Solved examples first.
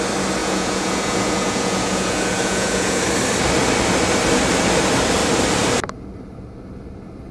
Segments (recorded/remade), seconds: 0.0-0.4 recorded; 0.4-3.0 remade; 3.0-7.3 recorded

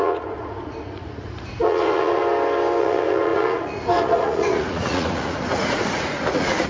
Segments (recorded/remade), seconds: 0.0-2.2 remade; 2.2-2.8 recorded; 2.8-6.7 remade

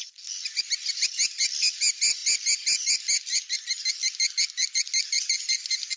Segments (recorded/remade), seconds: 0.0-6.0 recorded

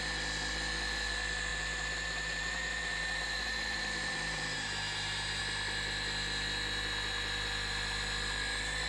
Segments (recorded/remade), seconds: 0.0-1.5 recorded; 1.5-5.4 remade; 5.4-8.9 recorded

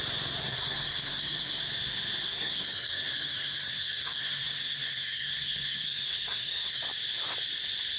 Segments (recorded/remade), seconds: 0.0-0.4 recorded; 0.4-1.6 remade; 1.6-2.2 recorded; 2.2-6.8 remade; 6.8-8.0 recorded

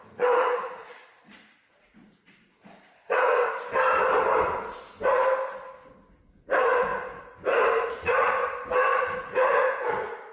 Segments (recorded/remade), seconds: 0.0-3.4 remade; 3.4-6.2 recorded; 6.2-6.9 remade; 6.9-7.9 recorded; 7.9-8.4 remade; 8.4-9.0 recorded; 9.0-10.3 remade

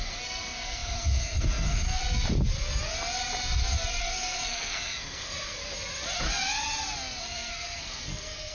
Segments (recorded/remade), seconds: 0.0-2.0 remade; 2.0-4.0 recorded; 4.0-5.6 remade; 5.6-7.2 recorded; 7.2-8.5 remade